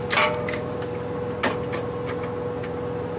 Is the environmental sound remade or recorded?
recorded